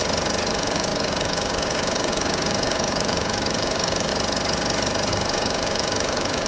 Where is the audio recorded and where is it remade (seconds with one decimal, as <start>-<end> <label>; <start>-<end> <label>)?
0.0-0.5 recorded; 0.5-4.1 remade; 4.1-5.1 recorded; 5.1-6.5 remade